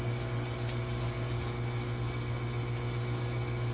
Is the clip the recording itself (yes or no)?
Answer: yes